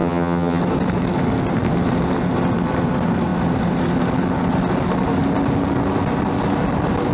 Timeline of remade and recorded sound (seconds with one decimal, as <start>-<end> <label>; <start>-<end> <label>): 0.0-0.6 remade; 0.6-7.1 recorded